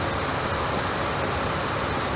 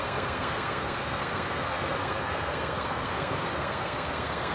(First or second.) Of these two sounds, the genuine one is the first